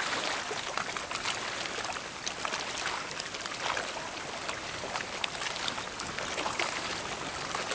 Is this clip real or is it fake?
real